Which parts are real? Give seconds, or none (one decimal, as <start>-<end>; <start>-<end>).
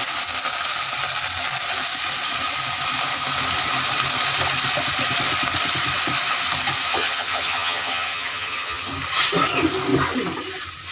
0.0-6.9; 8.9-10.9